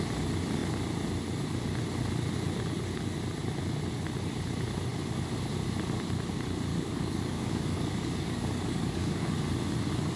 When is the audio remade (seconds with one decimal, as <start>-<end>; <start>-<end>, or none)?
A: 6.7-9.3